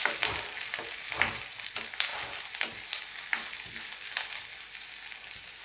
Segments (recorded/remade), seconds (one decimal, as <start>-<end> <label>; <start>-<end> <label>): 0.0-5.6 recorded